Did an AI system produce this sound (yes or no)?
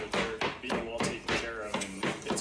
no